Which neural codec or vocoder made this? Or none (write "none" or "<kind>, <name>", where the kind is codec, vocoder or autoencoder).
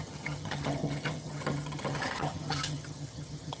vocoder, HiFi-GAN